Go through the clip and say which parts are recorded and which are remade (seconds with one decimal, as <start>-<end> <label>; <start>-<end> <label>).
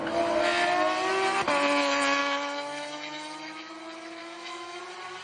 0.0-2.2 recorded; 2.2-3.7 remade; 3.7-4.2 recorded; 4.2-4.8 remade; 4.8-5.2 recorded